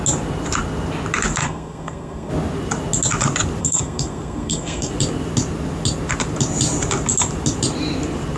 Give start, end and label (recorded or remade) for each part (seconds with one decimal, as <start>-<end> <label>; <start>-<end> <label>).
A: 0.0-1.4 recorded; 1.4-2.3 remade; 2.3-3.6 recorded; 3.6-4.9 remade; 4.9-8.4 recorded